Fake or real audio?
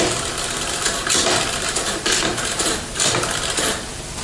real